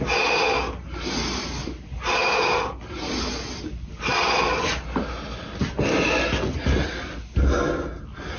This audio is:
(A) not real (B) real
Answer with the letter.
B